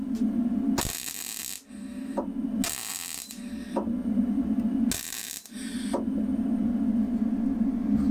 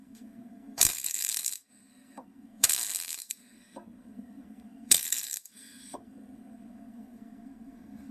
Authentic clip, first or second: first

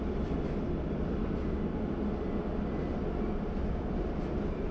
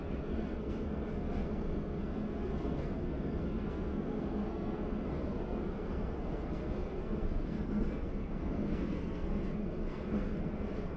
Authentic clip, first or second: first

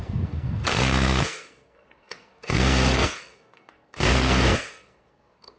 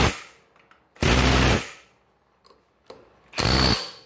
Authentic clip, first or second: second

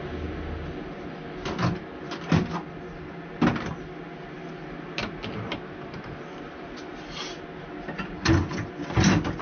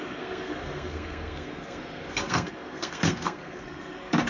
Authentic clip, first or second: first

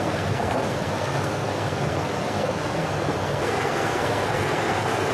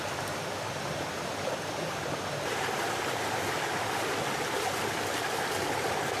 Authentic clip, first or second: second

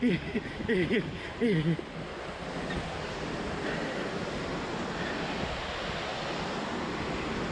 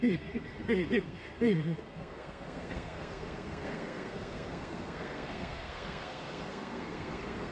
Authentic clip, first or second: first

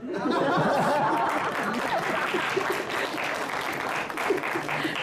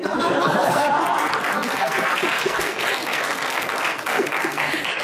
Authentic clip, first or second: first